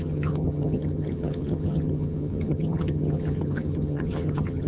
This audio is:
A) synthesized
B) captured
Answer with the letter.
A